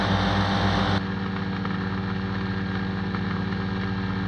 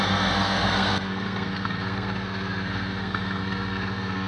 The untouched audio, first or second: first